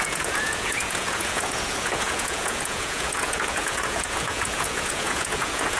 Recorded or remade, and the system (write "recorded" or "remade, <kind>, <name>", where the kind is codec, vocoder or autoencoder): remade, vocoder, Vocos